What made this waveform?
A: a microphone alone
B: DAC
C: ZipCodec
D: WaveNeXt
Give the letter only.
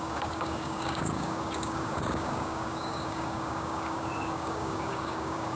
B